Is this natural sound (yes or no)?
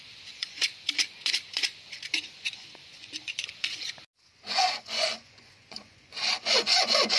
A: no